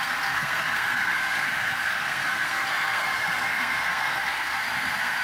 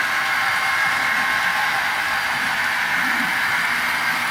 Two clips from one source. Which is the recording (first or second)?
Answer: second